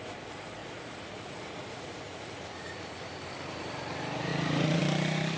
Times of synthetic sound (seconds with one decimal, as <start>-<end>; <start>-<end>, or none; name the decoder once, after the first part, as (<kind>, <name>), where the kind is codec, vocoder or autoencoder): 0.6-3.2 (vocoder, Vocos); 4.3-4.8